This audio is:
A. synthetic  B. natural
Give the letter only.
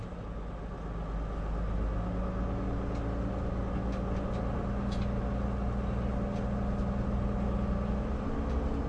B